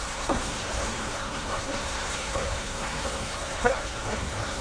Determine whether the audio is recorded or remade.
remade